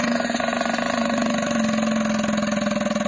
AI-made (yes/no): no